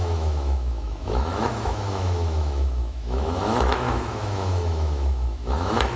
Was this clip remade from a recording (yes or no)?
yes